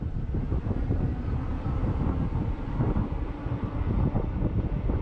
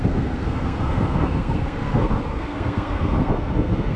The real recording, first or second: first